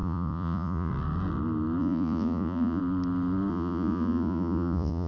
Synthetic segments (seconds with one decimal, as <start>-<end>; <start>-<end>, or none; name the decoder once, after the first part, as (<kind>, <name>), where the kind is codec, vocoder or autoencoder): 0.0-0.9 (vocoder, Vocos); 1.8-2.8; 3.5-5.1